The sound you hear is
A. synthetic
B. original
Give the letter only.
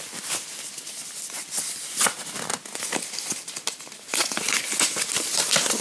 B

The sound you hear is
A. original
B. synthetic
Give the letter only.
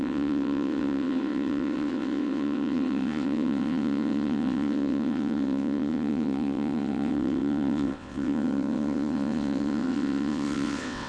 B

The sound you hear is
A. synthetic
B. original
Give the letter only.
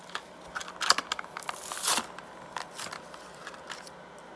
B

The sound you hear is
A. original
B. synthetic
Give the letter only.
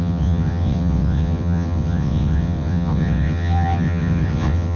B